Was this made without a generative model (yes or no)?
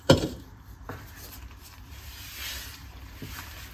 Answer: no